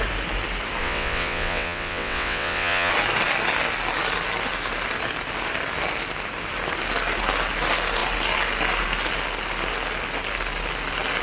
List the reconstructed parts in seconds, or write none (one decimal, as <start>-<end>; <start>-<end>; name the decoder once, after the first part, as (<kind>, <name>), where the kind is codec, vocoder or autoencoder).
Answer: 0.8-2.9 (vocoder, WaveNeXt)

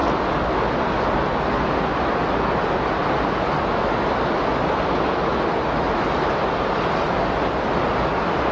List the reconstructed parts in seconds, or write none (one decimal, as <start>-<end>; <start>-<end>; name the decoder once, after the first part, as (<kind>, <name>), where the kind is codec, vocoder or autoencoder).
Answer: none

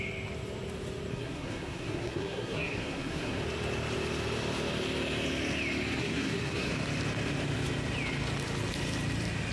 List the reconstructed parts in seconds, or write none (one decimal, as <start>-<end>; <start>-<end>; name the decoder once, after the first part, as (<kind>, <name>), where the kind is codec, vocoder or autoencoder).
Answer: 1.1-3.4 (codec, SNAC); 6.0-6.7

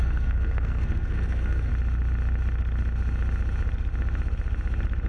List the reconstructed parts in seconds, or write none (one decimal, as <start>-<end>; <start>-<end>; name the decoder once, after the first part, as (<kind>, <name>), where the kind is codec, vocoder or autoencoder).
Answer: 0.0-1.7 (codec, SNAC)

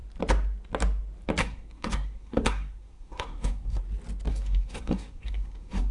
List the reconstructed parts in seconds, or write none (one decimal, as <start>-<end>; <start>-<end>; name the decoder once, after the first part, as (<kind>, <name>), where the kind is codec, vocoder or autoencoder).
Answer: 1.4-3.8 (codec, SNAC); 4.3-5.9

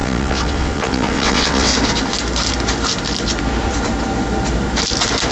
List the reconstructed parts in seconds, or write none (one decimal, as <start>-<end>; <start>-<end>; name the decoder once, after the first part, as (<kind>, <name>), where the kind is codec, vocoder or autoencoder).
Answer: 0.0-1.7 (vocoder, WaveNeXt)